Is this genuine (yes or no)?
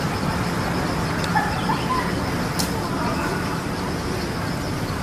yes